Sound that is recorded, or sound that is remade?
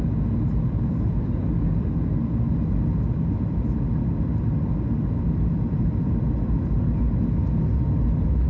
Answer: recorded